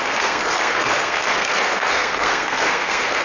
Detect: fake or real fake